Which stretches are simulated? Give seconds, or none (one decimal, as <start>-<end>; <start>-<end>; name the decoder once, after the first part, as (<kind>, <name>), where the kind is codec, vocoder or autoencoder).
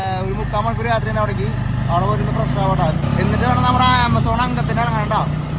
none